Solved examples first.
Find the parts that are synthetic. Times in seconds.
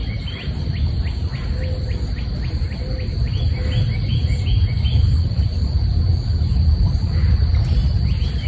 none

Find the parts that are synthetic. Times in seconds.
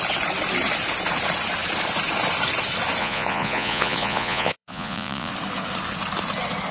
3.0-5.3 (vocoder, Vocos)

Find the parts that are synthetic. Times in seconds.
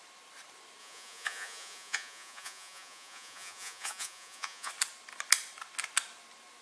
0.8-4.7 (vocoder, Vocos)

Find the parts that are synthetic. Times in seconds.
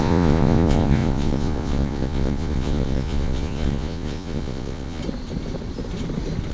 0.0-5.0 (vocoder, Vocos)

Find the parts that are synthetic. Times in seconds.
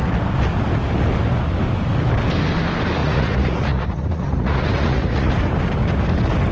3.0-5.3 (vocoder, Vocos)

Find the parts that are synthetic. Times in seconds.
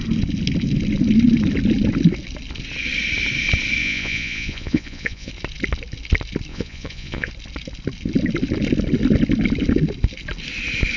3.8-5.3 (vocoder, Vocos); 6.5-7.3